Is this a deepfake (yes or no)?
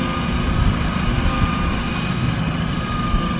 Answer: no